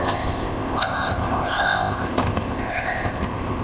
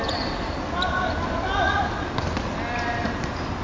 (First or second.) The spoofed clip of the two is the first